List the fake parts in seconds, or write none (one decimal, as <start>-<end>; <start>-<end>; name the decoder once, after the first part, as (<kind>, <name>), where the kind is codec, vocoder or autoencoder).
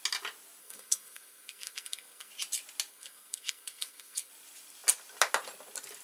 0.6-2.3 (codec, SNAC); 2.9-4.3